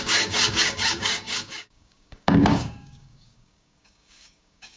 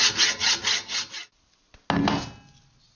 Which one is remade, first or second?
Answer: first